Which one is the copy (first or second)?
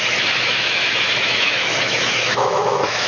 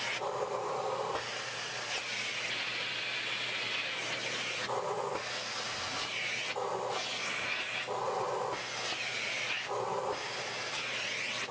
first